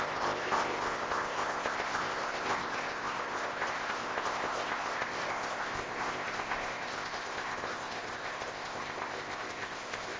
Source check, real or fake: fake